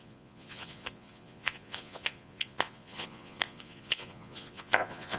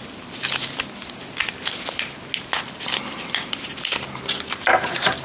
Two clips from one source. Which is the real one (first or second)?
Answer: second